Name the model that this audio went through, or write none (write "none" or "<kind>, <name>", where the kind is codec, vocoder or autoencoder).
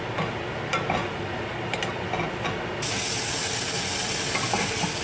none